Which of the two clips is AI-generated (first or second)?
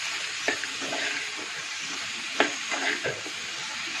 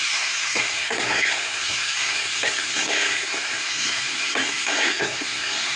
second